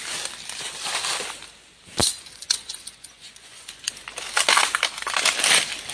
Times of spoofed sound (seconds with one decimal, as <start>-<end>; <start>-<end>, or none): 2.0-3.9